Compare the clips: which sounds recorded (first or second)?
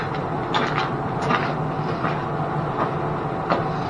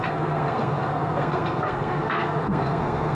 first